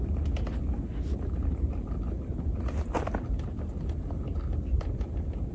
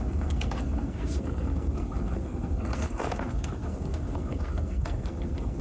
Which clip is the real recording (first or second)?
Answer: first